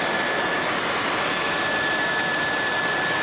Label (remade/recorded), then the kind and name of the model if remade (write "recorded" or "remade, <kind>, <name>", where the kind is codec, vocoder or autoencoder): recorded